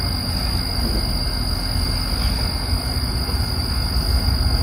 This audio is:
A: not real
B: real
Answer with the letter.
B